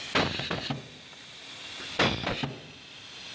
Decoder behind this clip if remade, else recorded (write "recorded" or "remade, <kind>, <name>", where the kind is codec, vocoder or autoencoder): recorded